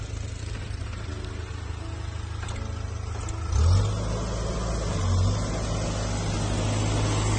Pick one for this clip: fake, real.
real